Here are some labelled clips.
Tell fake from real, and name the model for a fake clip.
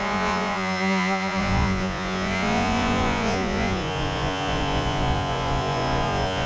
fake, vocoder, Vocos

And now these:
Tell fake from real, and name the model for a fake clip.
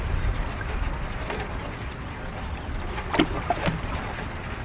real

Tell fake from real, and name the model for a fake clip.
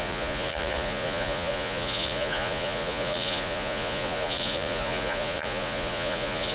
fake, vocoder, Vocos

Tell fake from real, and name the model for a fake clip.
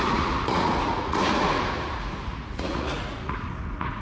fake, vocoder, Vocos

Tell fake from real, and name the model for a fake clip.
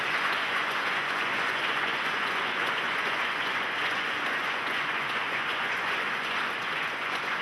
fake, vocoder, Vocos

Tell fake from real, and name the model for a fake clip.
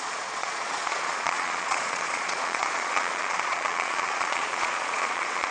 fake, vocoder, Vocos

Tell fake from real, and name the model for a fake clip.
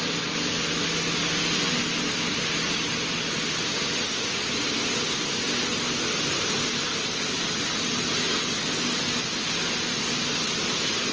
real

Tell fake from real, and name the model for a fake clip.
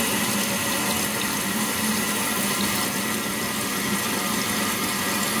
real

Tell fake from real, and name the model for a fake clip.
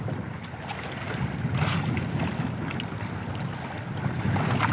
real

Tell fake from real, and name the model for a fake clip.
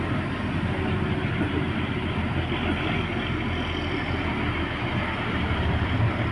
real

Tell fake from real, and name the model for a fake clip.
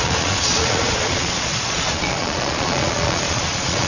fake, vocoder, Vocos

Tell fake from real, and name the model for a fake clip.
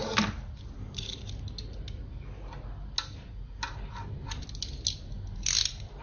real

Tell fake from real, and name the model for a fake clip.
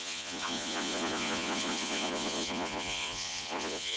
fake, vocoder, Vocos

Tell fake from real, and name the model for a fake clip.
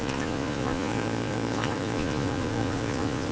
fake, vocoder, Vocos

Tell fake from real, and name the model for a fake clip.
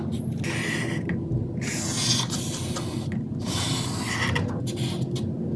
real